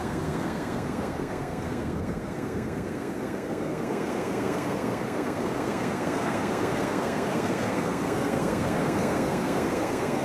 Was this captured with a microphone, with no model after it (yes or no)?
no